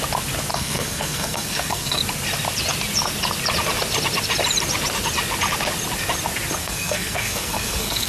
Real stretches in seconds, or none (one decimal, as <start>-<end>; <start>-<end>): 0.0-0.5; 2.0-6.6